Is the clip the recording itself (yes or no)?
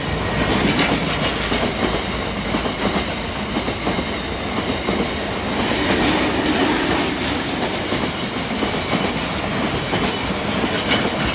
yes